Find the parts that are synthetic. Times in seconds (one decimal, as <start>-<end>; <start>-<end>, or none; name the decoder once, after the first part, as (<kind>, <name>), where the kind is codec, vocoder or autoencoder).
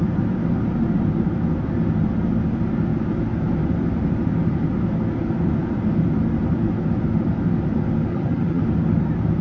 8.1-8.6 (vocoder, HiFi-GAN)